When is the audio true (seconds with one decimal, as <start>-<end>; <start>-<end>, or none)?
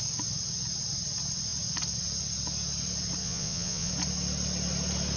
0.0-3.2; 3.9-5.2